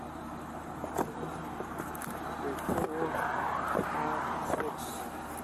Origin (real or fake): real